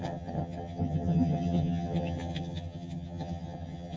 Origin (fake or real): fake